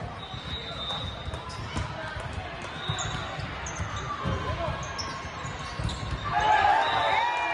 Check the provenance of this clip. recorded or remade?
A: recorded